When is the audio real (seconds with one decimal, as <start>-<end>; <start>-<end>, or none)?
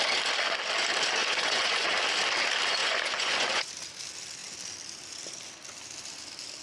0.0-1.2; 1.9-2.8; 3.7-6.6